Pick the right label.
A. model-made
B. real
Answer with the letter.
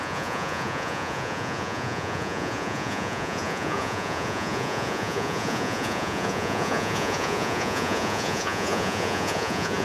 A